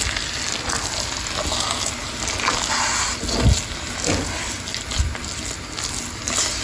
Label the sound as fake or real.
real